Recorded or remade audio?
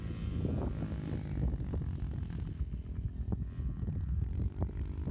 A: recorded